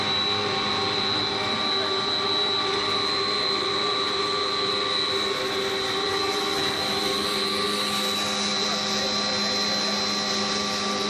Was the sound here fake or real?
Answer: real